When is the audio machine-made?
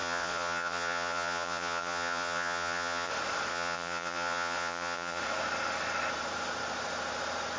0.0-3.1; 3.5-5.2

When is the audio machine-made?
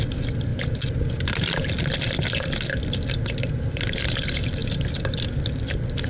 none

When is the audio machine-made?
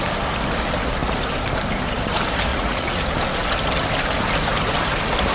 2.5-3.0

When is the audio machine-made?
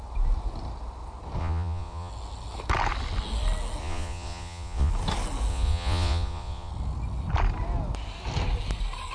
1.4-2.1; 3.8-4.9; 5.5-6.7